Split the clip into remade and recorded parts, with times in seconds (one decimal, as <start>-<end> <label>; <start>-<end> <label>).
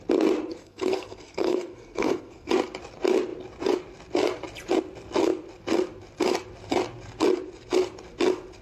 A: 0.0-0.6 recorded; 0.6-2.5 remade; 2.5-8.6 recorded